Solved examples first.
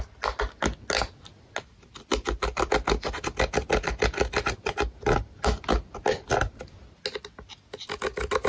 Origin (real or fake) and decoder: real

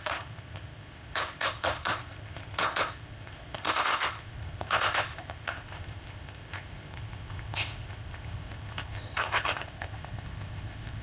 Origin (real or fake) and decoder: fake, codec, ZipCodec